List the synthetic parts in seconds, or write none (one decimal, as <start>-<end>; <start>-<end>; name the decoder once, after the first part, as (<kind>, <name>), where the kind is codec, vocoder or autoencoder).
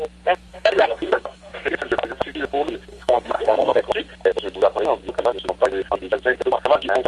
0.5-1.5 (codec, SNAC); 2.9-3.8